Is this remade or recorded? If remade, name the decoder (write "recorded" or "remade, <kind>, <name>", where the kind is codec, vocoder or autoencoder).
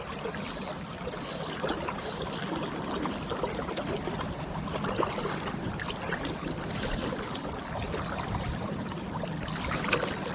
recorded